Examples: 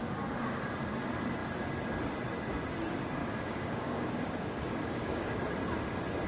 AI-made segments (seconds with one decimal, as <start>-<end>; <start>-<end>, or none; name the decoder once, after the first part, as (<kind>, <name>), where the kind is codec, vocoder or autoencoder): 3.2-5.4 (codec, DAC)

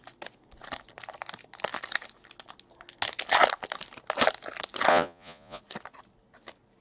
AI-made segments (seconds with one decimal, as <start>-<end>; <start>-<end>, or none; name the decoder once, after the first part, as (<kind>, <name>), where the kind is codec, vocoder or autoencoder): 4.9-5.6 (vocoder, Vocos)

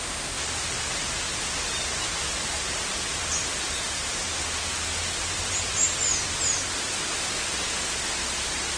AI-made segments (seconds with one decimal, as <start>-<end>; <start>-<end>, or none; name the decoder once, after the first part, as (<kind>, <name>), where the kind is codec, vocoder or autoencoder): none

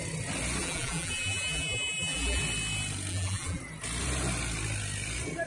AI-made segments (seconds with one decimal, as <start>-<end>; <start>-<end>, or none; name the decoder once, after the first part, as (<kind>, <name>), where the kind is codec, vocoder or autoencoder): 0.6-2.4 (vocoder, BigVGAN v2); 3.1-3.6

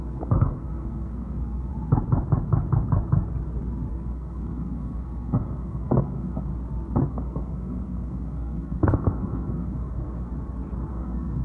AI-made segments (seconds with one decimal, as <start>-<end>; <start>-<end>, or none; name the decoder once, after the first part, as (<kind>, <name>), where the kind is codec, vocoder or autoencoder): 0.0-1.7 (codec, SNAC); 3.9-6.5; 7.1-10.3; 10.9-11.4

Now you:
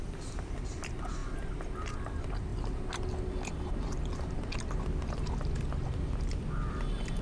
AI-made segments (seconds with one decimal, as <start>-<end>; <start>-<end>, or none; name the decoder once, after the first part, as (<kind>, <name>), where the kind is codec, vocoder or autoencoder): 2.5-3.7 (vocoder, BigVGAN v2)

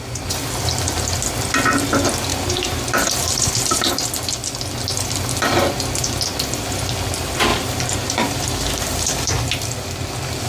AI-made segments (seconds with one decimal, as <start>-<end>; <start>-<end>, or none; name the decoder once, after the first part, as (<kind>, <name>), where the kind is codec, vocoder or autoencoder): 2.3-3.9 (vocoder, BigVGAN v2); 7.5-9.4